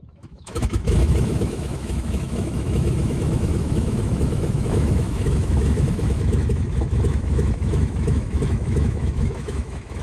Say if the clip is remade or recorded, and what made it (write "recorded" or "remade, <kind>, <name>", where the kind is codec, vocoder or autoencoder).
remade, autoencoder, DAC-VAE